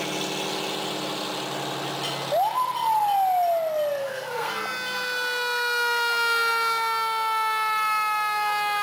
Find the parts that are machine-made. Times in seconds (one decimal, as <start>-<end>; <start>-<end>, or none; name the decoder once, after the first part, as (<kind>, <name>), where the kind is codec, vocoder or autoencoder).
4.0-4.5 (codec, SNAC)